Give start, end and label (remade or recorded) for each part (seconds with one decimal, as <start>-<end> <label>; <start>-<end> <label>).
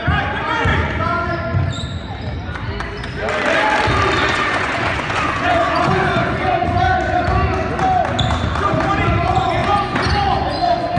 0.0-0.7 recorded; 0.7-1.3 remade; 1.3-4.3 recorded; 4.3-7.0 remade; 7.0-9.6 recorded; 9.6-11.0 remade